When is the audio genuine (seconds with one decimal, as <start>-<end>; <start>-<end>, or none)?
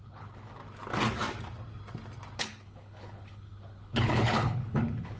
0.6-2.4